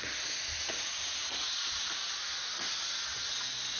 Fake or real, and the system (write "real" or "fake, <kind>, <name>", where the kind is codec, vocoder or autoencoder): real